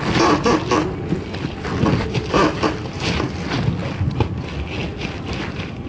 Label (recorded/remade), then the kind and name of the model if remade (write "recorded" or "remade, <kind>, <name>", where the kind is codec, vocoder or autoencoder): recorded